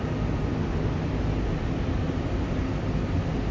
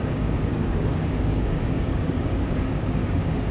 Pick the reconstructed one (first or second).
second